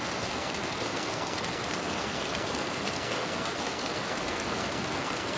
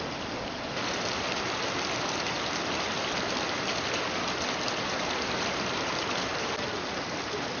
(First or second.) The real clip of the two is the second